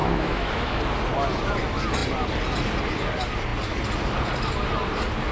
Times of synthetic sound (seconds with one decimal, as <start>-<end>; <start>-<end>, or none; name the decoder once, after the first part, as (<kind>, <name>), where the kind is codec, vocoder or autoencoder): 0.0-0.8 (autoencoder, DAC-VAE)

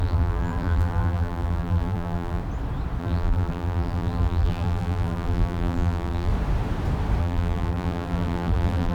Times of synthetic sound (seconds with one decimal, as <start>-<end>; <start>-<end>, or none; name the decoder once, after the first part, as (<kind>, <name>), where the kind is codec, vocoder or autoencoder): 0.0-2.4 (vocoder, BigVGAN v2); 3.0-6.3; 7.2-8.9

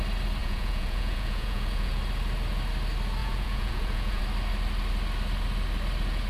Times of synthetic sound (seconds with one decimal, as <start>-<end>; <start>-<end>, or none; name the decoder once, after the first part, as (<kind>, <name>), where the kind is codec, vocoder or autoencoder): 0.4-2.0 (vocoder, Vocos); 3.2-4.2

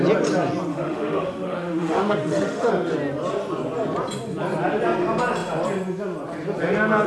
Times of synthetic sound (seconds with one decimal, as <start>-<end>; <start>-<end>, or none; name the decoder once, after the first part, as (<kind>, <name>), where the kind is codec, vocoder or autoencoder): 0.7-2.7 (autoencoder, DAC-VAE)

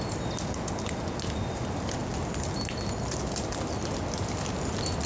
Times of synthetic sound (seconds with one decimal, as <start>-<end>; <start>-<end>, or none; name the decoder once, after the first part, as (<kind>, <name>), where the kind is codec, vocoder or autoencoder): none

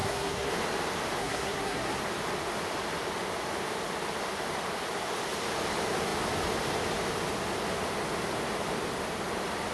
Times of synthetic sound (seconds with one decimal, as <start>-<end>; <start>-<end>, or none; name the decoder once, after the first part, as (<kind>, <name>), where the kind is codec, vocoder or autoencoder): 0.0-0.5 (codec, SNAC); 1.2-2.0

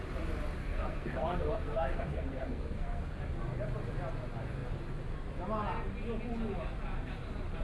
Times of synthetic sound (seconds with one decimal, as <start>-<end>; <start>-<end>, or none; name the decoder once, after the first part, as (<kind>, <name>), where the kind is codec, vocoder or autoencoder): 0.6-3.2 (codec, SNAC)